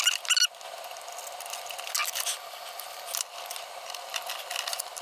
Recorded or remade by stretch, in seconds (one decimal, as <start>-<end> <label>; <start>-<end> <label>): 0.0-5.0 recorded